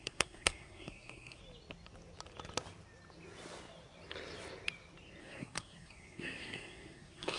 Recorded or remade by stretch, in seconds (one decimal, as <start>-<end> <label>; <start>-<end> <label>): 0.0-1.4 remade; 1.4-5.2 recorded; 5.2-7.4 remade